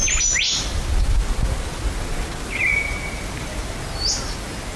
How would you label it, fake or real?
real